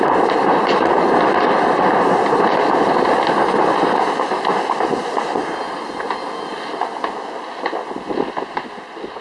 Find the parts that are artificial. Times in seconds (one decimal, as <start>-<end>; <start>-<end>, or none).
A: none

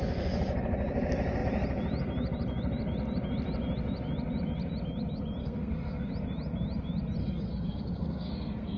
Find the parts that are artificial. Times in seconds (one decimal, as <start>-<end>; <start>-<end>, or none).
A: 5.4-6.1; 7.2-8.8

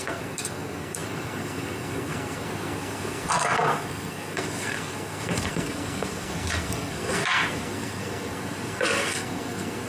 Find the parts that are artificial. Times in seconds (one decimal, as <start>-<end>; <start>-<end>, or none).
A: 0.0-9.9

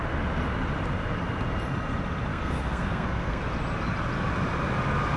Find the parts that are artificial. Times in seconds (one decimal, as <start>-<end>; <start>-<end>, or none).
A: 2.3-3.4